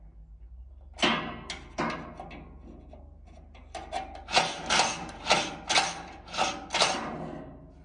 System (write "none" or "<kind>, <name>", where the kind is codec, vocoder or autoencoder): none